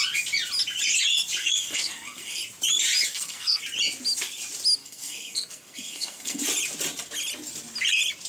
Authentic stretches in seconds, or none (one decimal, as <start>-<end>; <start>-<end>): 0.0-1.4; 2.4-3.1; 3.6-4.8; 6.4-8.3